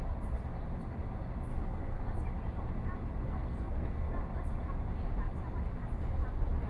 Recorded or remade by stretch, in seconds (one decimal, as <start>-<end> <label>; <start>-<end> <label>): 0.0-1.5 recorded; 1.5-2.0 remade; 2.0-3.2 recorded; 3.2-4.1 remade; 4.1-6.7 recorded